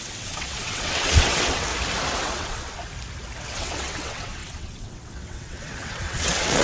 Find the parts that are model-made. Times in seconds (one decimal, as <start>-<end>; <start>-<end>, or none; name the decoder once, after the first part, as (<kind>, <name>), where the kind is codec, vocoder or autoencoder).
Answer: 0.0-1.7 (vocoder, WaveNeXt); 2.2-2.8; 3.4-6.6